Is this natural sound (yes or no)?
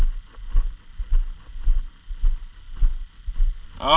yes